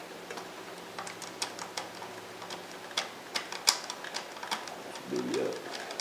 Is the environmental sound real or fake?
real